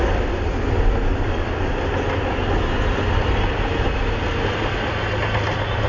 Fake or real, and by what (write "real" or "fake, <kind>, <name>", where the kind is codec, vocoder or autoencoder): real